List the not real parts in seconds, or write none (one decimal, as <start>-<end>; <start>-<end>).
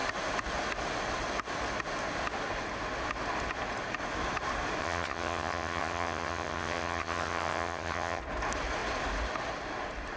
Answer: 4.8-8.2